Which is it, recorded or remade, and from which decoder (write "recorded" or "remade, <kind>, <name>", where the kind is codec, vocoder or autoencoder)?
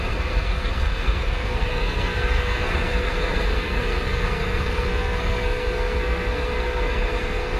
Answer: remade, codec, SNAC